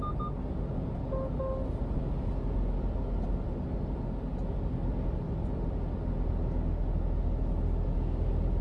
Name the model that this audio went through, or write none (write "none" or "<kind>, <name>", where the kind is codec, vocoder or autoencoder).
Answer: none